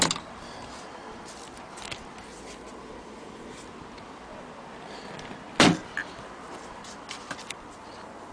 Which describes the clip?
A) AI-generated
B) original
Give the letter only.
B